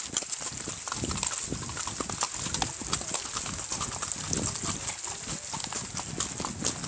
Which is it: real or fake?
real